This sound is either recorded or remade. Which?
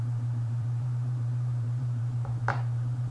remade